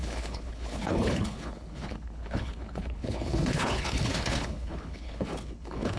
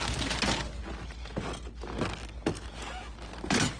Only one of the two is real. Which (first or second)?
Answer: second